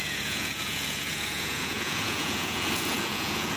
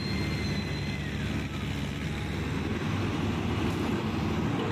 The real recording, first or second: second